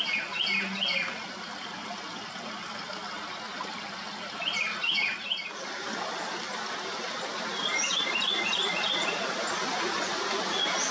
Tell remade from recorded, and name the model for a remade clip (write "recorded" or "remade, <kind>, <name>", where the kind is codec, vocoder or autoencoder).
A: recorded